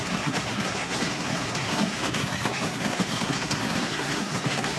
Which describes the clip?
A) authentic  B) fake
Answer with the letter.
B